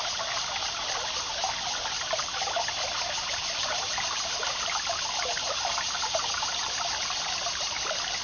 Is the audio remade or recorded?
recorded